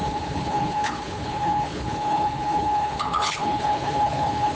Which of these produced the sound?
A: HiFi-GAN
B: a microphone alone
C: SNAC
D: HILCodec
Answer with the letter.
D